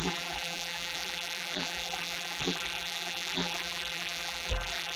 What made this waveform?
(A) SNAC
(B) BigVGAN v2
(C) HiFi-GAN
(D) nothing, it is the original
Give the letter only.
B